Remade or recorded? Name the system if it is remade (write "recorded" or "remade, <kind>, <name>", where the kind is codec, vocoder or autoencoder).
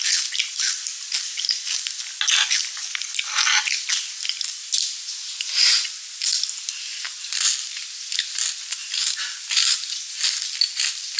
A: recorded